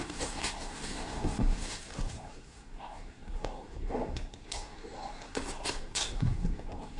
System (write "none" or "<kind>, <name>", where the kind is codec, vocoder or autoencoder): codec, SNAC